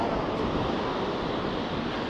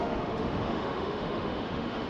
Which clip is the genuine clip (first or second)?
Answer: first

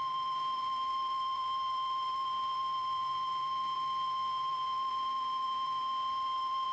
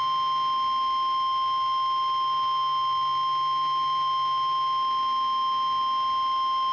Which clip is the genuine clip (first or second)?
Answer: second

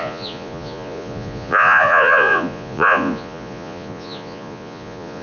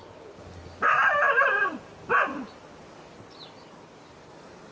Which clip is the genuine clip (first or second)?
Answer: second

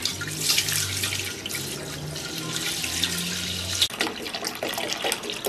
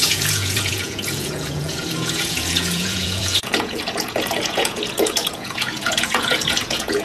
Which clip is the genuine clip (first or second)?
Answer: first